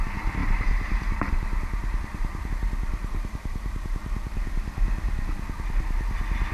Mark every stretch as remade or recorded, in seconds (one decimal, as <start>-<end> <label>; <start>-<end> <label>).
0.0-0.4 recorded; 0.4-2.5 remade; 2.5-3.0 recorded; 3.0-3.8 remade; 3.8-6.5 recorded